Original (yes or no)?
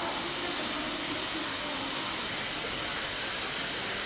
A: yes